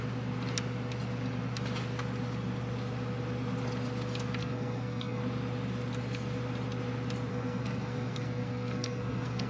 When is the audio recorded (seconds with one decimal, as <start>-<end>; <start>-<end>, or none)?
0.0-4.4; 5.2-7.3